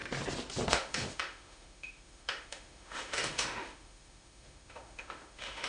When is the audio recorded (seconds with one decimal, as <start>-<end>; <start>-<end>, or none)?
0.0-0.7